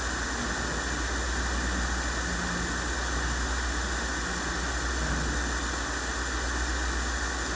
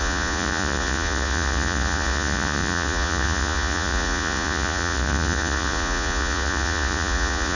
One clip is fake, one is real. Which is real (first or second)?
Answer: first